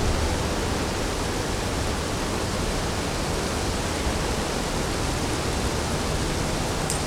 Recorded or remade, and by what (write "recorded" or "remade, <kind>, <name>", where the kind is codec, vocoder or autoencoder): recorded